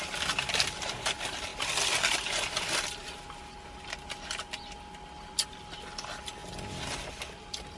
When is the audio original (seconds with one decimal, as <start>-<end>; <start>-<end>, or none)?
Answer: 0.0-7.8